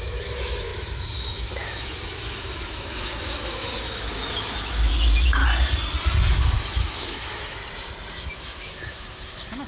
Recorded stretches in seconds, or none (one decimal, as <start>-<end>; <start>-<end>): 5.4-6.3; 7.6-8.2